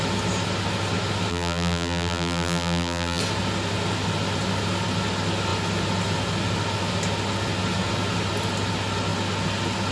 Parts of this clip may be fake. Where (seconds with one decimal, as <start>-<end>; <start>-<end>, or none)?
1.3-3.2